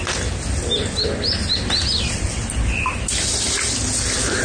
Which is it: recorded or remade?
recorded